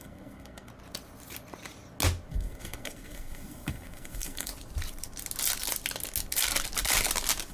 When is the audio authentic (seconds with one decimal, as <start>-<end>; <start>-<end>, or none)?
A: 0.7-2.3; 4.5-7.5